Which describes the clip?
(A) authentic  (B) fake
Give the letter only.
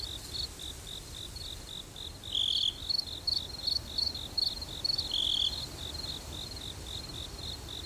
A